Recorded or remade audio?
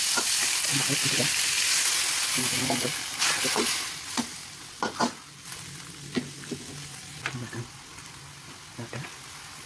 recorded